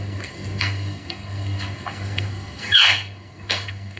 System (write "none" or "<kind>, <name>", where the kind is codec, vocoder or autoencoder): codec, SNAC